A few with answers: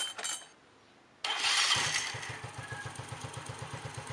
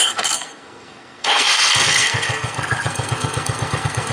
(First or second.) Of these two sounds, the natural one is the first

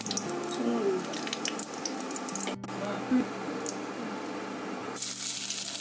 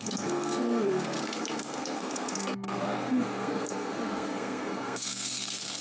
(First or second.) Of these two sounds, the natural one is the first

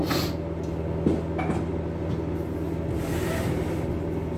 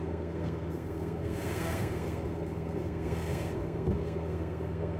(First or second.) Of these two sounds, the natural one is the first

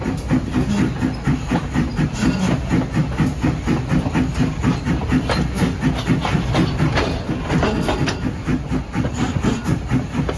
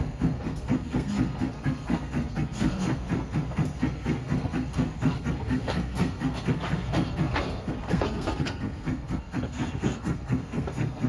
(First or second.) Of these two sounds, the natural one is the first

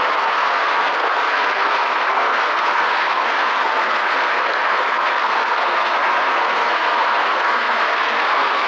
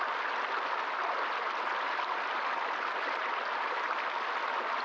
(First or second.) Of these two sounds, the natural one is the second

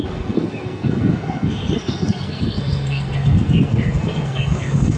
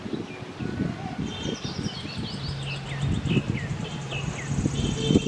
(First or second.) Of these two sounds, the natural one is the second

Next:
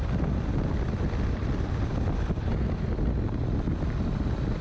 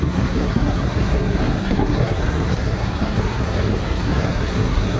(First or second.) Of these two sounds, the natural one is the first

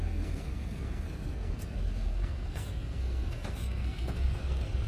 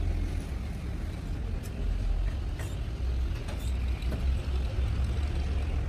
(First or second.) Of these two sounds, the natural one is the second